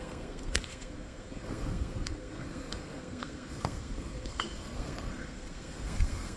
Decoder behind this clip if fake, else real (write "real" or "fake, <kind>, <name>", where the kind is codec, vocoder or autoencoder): fake, codec, SNAC